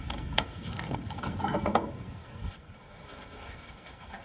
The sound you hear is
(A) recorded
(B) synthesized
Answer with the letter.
B